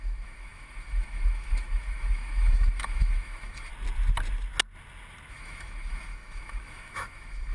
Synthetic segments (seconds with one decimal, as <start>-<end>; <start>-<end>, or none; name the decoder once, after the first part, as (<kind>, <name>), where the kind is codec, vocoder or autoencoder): 0.0-3.7 (autoencoder, DAC-VAE); 5.3-7.5